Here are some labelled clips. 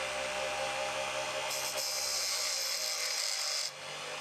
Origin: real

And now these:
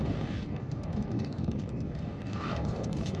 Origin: fake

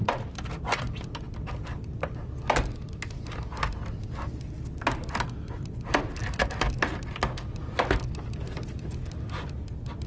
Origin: real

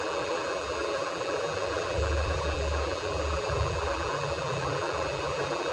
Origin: fake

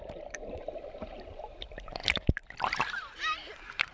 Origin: fake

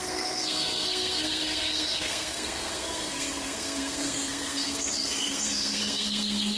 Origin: fake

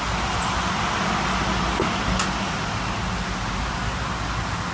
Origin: real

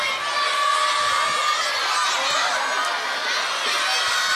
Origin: real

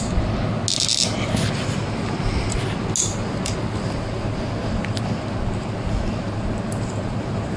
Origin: real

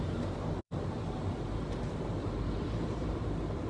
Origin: fake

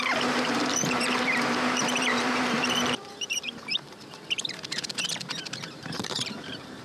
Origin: fake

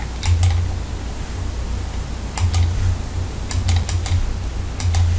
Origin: real